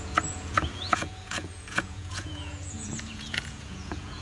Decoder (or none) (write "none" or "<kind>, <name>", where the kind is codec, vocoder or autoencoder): vocoder, Vocos